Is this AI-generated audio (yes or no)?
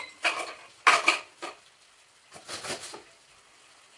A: no